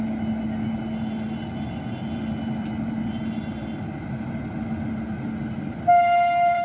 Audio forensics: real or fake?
real